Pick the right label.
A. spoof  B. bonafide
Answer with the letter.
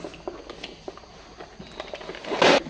B